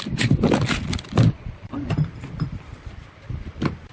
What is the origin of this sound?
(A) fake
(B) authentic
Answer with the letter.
B